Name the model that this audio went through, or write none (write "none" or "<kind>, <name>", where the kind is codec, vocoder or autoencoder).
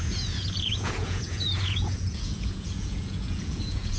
vocoder, Vocos